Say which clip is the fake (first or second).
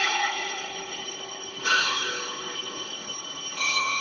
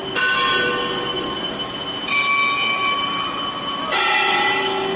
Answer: first